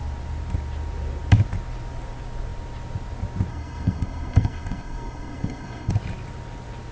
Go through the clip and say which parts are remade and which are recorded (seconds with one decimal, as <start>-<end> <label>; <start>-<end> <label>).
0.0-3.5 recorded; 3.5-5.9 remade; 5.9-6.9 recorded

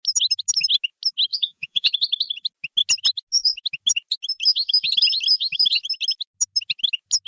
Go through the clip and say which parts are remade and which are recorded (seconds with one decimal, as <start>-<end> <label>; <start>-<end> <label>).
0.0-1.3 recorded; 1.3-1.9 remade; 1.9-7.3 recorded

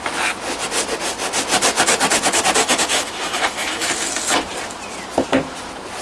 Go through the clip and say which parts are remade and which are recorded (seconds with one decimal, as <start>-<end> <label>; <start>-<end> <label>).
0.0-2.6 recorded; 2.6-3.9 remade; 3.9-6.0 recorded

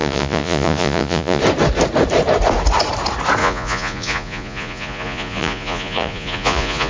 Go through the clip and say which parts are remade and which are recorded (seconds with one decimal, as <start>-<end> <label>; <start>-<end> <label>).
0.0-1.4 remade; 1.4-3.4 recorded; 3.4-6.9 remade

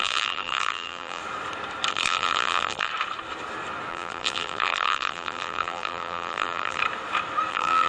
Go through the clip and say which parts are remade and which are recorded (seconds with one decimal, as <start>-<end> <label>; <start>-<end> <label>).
0.0-1.2 remade; 1.2-1.9 recorded; 1.9-2.9 remade; 2.9-3.9 recorded; 3.9-6.8 remade; 6.8-7.5 recorded; 7.5-7.9 remade

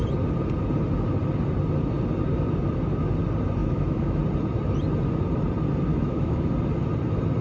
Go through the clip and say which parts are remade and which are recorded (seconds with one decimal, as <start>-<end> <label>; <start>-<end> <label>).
0.0-3.6 recorded; 3.6-4.2 remade; 4.2-5.9 recorded; 5.9-6.5 remade; 6.5-7.4 recorded

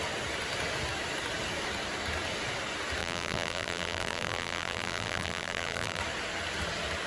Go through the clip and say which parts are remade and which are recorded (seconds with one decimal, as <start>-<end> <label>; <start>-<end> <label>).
0.0-3.0 recorded; 3.0-6.0 remade; 6.0-7.1 recorded